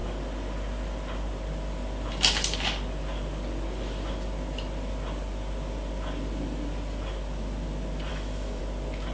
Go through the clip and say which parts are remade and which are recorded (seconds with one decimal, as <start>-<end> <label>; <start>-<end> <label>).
0.0-8.1 recorded; 8.1-8.6 remade; 8.6-9.1 recorded